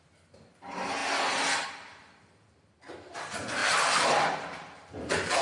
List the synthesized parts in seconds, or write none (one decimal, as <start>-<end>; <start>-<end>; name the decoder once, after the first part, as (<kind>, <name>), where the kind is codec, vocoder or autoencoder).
1.0-2.2 (vocoder, BigVGAN v2); 3.6-5.4